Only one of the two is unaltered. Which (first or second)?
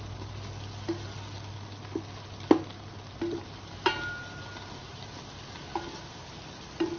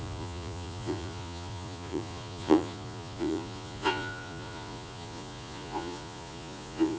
first